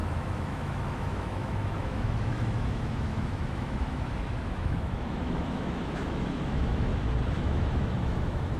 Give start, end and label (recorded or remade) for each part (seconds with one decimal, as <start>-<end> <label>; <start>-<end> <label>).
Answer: 0.0-6.9 remade; 6.9-7.4 recorded; 7.4-8.6 remade